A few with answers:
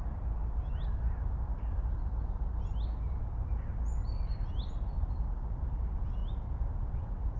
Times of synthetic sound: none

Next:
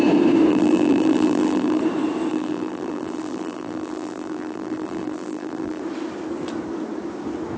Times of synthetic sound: 0.5-1.8; 2.3-5.8

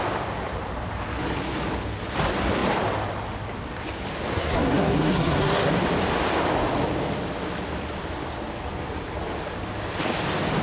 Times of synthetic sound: 4.3-5.7

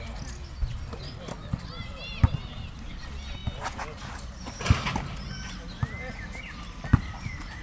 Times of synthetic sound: none

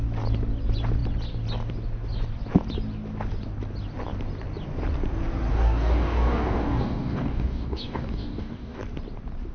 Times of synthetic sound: 5.5-8.8

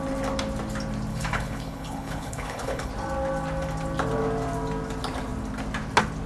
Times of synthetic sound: 1.1-2.9